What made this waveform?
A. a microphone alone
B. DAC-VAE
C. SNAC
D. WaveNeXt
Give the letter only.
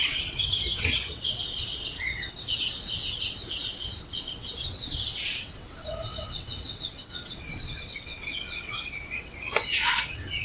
D